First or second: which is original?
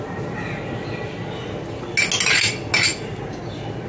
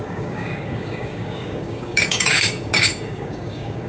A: first